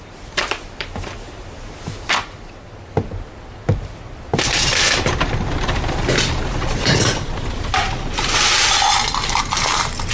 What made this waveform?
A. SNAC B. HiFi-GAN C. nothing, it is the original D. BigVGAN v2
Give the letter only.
D